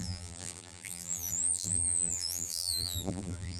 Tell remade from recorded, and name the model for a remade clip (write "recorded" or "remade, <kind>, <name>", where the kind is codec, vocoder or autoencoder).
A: remade, vocoder, BigVGAN v2